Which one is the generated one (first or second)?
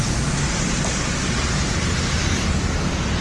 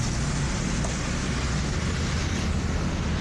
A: first